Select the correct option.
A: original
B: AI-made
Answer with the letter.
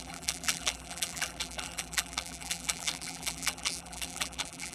B